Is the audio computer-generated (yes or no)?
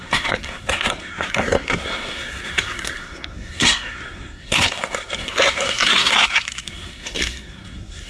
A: yes